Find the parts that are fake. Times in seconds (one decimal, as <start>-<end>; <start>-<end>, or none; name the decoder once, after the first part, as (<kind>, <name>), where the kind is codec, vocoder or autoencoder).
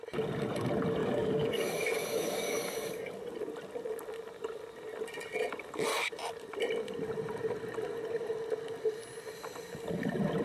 1.0-3.2 (codec, DAC)